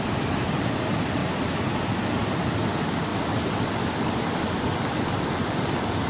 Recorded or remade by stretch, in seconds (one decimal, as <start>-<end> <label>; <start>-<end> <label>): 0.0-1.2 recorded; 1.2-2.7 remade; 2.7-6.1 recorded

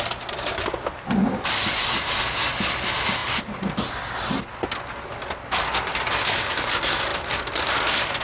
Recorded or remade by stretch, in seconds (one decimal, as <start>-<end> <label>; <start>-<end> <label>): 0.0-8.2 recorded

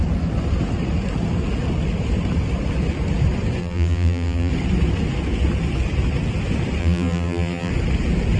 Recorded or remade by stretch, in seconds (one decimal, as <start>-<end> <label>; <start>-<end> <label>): 0.0-3.6 recorded; 3.6-4.5 remade; 4.5-6.8 recorded; 6.8-7.7 remade; 7.7-8.4 recorded

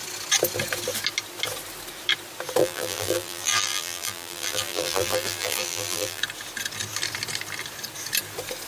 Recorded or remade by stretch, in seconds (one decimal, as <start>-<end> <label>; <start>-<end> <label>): 0.0-2.6 recorded; 2.6-6.2 remade; 6.2-8.7 recorded

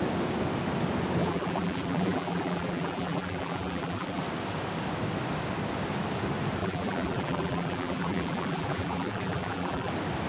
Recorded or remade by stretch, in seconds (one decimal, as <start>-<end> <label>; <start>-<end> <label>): 0.0-1.2 recorded; 1.2-4.2 remade; 4.2-6.6 recorded; 6.6-9.9 remade; 9.9-10.3 recorded